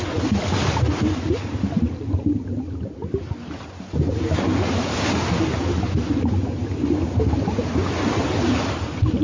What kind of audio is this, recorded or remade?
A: recorded